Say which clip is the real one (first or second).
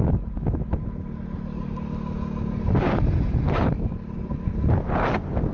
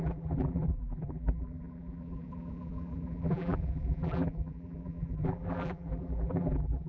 first